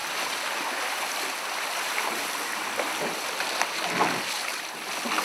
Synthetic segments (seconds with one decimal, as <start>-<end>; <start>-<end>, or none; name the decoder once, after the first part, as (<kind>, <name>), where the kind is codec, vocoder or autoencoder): none